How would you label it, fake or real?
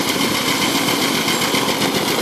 real